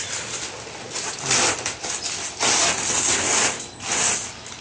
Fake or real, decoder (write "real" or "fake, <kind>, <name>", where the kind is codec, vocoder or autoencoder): real